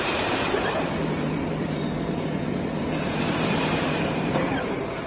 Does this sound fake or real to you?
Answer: fake